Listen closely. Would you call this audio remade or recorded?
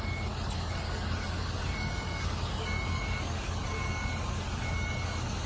remade